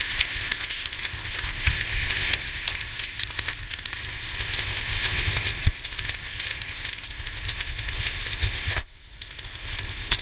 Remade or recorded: remade